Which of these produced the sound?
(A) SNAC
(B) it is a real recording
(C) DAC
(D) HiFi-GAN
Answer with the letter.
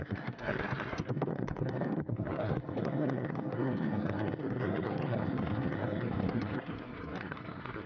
A